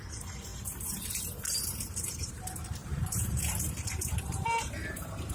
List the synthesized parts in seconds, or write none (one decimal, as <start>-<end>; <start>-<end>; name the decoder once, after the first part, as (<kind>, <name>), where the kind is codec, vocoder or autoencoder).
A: 0.0-5.3 (vocoder, BigVGAN v2)